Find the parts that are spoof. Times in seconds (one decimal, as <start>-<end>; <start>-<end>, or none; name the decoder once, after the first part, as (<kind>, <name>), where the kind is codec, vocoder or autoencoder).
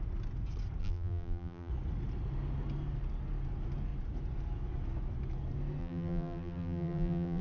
0.8-1.7 (vocoder, BigVGAN v2); 5.8-7.4